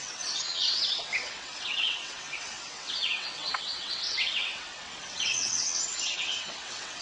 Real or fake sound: fake